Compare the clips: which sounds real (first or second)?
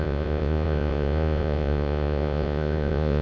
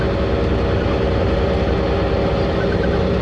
second